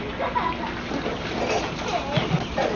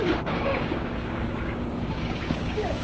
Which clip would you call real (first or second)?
first